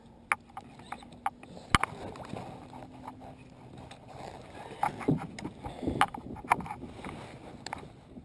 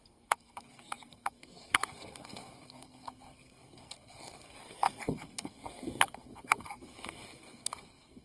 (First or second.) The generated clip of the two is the second